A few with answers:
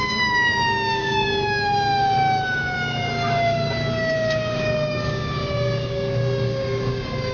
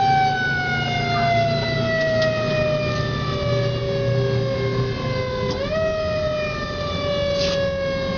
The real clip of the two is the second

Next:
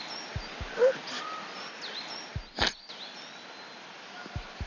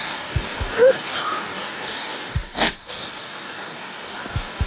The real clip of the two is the first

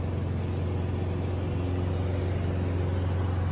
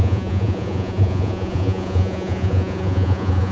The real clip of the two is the first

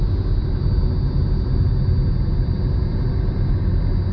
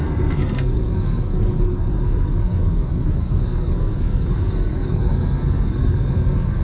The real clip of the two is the first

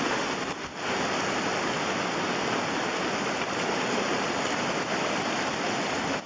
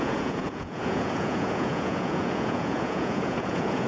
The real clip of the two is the first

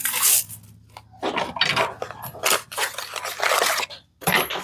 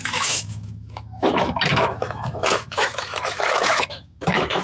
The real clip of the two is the first